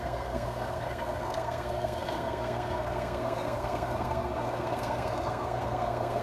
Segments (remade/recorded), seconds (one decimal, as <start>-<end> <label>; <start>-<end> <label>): 0.0-6.2 remade